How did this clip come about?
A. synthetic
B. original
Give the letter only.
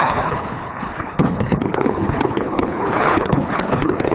A